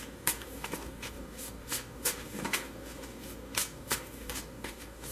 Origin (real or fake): fake